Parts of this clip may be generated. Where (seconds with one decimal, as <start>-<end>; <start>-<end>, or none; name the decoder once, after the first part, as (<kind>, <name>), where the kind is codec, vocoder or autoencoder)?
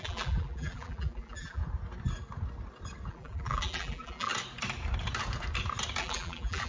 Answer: 0.0-1.6 (vocoder, BigVGAN v2); 3.1-4.3; 6.0-6.7